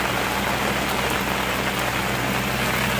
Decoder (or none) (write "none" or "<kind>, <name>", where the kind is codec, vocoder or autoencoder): none